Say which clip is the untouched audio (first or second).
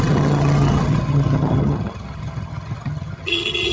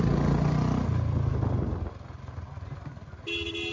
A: second